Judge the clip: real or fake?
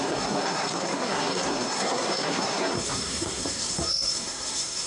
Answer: fake